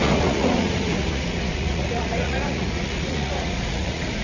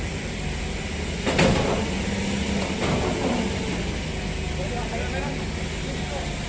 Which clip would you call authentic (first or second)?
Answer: second